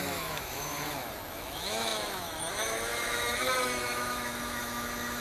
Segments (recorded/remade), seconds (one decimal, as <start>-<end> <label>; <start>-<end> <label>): 0.0-5.2 remade